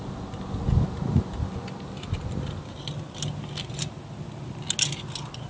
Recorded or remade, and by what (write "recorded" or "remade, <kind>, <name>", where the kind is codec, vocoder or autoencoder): recorded